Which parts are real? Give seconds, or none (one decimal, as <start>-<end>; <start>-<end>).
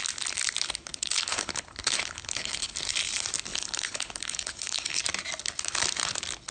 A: 0.0-0.9; 2.7-3.5; 5.0-6.5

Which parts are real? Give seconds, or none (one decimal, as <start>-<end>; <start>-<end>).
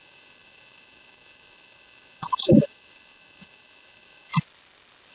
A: 4.3-5.1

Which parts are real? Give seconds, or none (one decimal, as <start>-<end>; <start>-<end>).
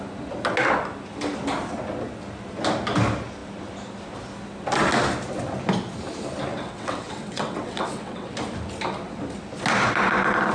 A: 0.0-6.5; 8.3-10.5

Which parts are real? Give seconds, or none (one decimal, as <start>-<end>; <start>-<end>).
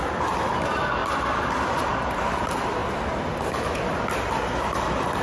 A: 0.0-5.2